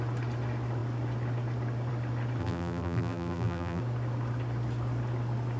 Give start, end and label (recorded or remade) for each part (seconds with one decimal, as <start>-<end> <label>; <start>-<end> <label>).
0.0-2.4 recorded; 2.4-3.8 remade; 3.8-5.6 recorded